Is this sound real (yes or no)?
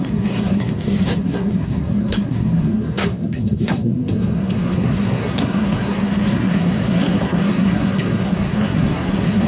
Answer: no